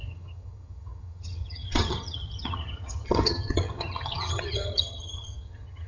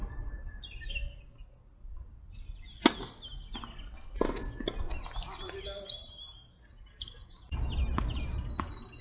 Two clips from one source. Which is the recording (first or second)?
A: second